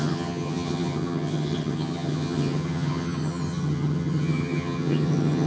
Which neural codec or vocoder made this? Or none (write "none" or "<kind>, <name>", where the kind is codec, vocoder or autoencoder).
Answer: vocoder, HiFi-GAN